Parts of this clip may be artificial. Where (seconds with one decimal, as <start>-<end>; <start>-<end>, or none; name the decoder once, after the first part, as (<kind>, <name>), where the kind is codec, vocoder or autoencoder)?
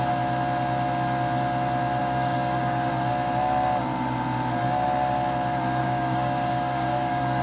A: 2.0-2.9 (codec, DAC); 5.8-7.4